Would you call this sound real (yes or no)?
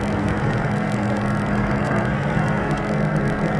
no